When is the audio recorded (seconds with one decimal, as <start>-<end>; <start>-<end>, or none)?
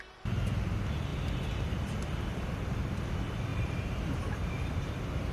0.0-2.3; 2.9-3.5; 4.2-5.3